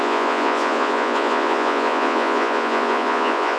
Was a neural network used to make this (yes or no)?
yes